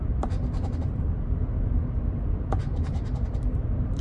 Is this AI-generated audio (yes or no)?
yes